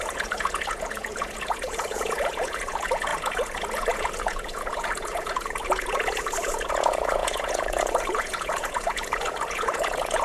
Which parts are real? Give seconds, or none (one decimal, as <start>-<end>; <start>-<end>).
none